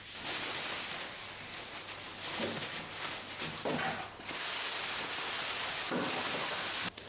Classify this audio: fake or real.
real